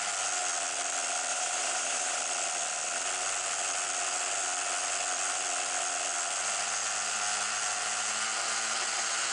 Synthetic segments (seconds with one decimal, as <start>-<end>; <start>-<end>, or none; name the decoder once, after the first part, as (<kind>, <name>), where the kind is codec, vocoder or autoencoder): 1.3-2.2 (vocoder, BigVGAN v2)